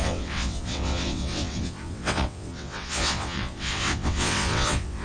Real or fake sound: fake